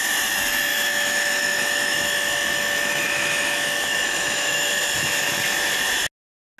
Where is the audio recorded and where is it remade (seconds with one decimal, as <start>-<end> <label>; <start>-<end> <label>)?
0.0-0.7 recorded; 0.7-4.7 remade; 4.7-6.6 recorded